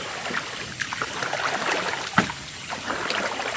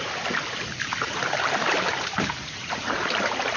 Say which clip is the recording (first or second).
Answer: first